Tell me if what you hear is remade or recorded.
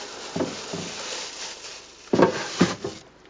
recorded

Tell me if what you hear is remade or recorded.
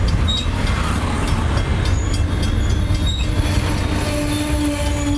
recorded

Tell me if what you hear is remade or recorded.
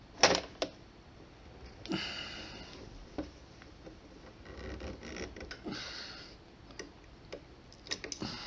recorded